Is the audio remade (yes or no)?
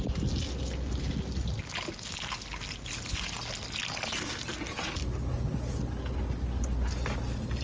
no